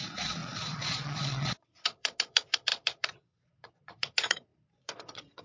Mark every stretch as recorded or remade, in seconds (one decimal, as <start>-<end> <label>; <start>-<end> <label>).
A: 0.0-5.4 remade